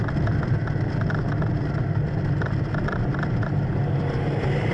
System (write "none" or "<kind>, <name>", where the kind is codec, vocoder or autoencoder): none